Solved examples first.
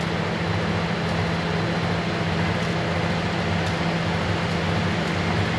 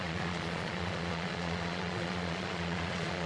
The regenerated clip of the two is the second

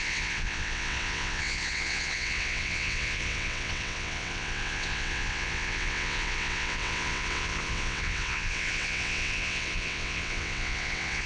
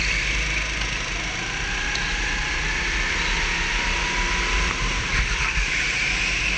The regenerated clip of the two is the first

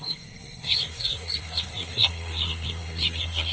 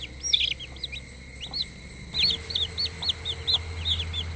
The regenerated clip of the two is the first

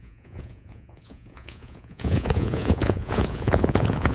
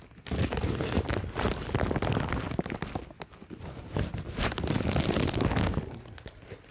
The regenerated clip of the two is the first